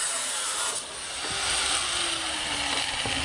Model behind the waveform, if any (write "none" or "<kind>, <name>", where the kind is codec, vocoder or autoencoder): vocoder, BigVGAN v2